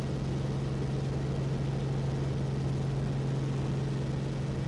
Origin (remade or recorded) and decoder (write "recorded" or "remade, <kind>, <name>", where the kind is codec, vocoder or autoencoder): recorded